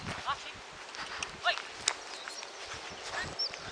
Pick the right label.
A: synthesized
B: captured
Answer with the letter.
B